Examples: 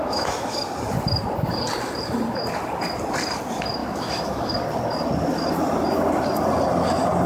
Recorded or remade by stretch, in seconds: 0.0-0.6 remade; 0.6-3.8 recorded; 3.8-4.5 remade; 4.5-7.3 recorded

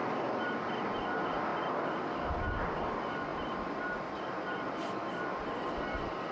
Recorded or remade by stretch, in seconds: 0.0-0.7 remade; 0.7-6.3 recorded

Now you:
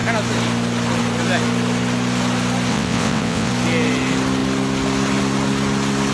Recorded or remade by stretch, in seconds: 0.0-2.7 recorded; 2.7-3.5 remade; 3.5-6.1 recorded

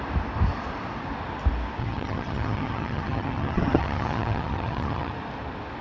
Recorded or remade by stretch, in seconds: 0.0-1.8 recorded; 1.8-5.1 remade; 5.1-5.8 recorded